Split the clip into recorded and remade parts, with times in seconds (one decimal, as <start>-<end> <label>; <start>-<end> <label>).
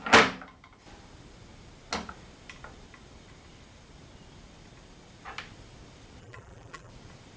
0.0-6.2 recorded; 6.2-6.9 remade; 6.9-7.4 recorded